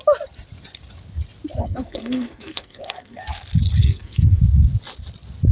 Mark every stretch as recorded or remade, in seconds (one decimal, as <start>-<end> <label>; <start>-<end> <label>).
0.0-1.6 recorded; 1.6-3.2 remade; 3.2-3.8 recorded; 3.8-4.4 remade; 4.4-5.5 recorded